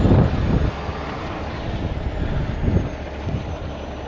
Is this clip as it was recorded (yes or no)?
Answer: yes